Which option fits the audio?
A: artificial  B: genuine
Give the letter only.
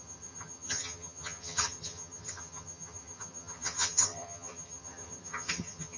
A